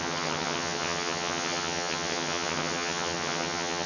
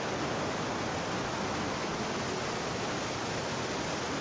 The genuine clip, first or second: second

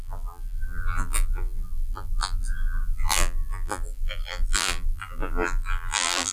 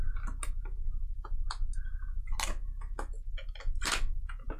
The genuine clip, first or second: second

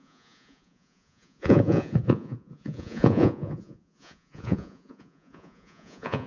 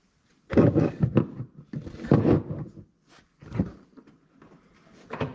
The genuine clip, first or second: second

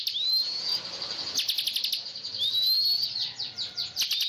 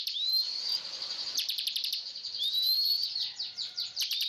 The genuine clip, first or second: first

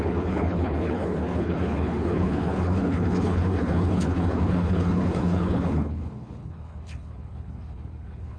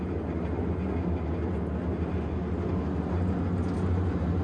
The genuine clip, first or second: second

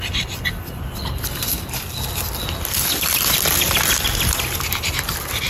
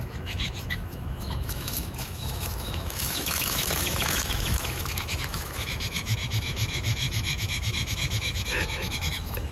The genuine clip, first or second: first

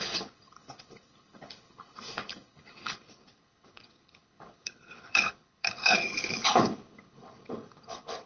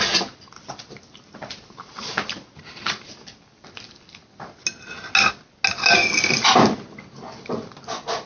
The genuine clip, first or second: second